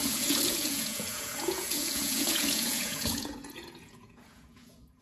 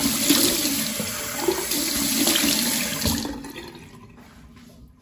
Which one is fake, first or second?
first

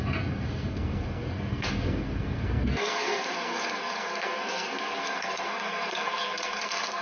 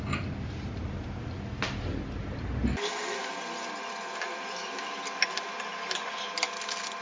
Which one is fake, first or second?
first